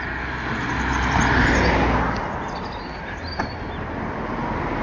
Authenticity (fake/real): real